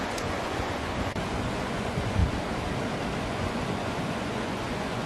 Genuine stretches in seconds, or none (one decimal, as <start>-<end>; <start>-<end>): 2.2-3.2